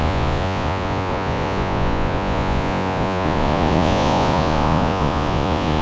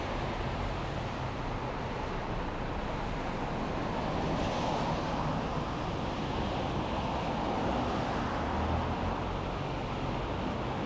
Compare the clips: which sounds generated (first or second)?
first